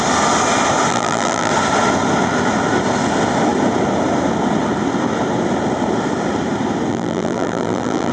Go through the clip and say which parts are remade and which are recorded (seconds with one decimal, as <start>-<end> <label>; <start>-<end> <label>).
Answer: 0.0-0.9 recorded; 0.9-1.5 remade; 1.5-6.9 recorded; 6.9-8.1 remade